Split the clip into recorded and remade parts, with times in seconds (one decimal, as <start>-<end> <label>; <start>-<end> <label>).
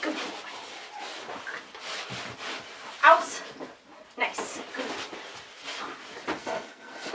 0.0-6.4 recorded; 6.4-7.1 remade